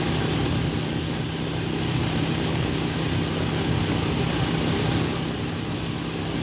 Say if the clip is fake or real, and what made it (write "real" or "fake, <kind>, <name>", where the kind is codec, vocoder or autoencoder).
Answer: real